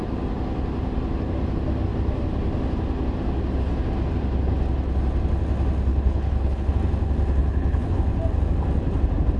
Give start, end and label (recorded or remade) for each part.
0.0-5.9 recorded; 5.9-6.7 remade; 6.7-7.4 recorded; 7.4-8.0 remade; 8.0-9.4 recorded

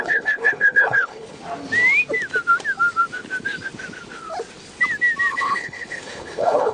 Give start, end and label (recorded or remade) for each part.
0.0-1.4 remade; 1.4-5.3 recorded; 5.3-6.7 remade

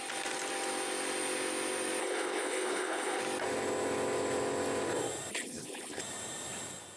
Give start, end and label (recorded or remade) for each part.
0.0-2.0 recorded; 2.0-3.2 remade; 3.2-5.3 recorded; 5.3-6.0 remade; 6.0-7.0 recorded

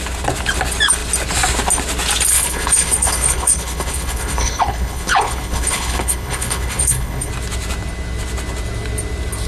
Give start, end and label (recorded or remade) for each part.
0.0-2.3 recorded; 2.3-7.3 remade; 7.3-9.5 recorded

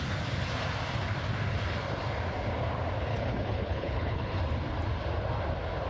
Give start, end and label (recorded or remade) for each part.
0.0-3.1 recorded; 3.1-4.4 remade; 4.4-5.9 recorded

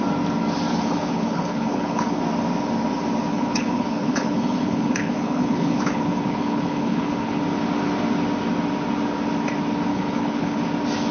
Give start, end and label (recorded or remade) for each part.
0.0-0.7 recorded; 0.7-2.2 remade; 2.2-3.3 recorded; 3.3-7.4 remade; 7.4-9.9 recorded; 9.9-10.6 remade; 10.6-11.1 recorded

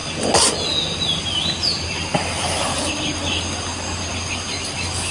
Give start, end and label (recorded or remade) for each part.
0.0-5.1 recorded

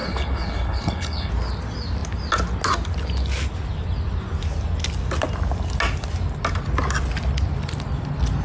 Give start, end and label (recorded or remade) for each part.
0.0-1.3 remade; 1.3-8.4 recorded